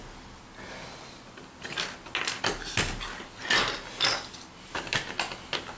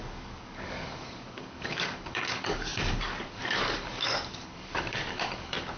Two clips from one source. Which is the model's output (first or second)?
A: second